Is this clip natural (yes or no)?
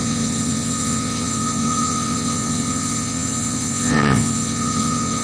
no